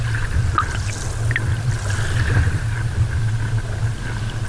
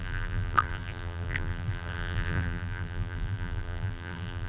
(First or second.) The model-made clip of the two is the second